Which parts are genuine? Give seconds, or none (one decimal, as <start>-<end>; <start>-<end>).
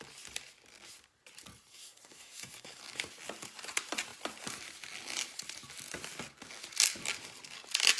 0.0-1.7; 2.8-8.0